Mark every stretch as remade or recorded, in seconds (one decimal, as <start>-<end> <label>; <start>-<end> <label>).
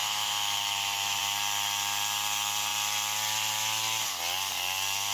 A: 0.0-1.2 remade; 1.2-5.1 recorded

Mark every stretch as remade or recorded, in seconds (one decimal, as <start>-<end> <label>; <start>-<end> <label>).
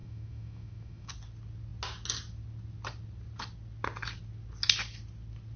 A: 0.0-1.1 remade; 1.1-5.6 recorded